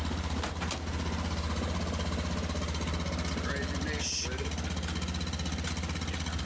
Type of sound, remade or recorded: recorded